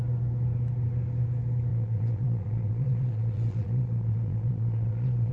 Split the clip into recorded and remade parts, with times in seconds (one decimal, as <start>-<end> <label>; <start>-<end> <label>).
0.0-1.7 recorded; 1.7-5.3 remade